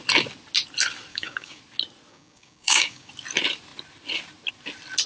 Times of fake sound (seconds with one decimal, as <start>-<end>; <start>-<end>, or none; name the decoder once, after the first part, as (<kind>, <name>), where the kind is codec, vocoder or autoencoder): 1.1-1.6 (codec, DAC); 2.1-3.1